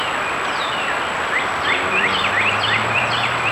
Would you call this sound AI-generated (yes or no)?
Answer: yes